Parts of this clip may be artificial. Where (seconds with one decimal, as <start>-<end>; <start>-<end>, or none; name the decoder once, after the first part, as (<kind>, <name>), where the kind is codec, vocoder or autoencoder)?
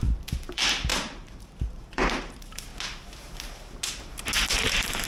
0.0-2.7 (vocoder, BigVGAN v2); 4.5-5.1